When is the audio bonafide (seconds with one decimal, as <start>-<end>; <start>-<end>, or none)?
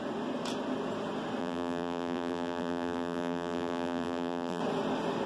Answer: 0.0-1.4; 4.6-5.3